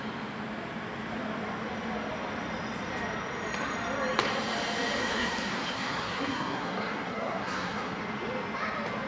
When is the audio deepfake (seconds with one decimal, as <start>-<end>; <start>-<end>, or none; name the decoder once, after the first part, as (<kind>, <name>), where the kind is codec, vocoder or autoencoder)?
5.0-8.0 (codec, SNAC)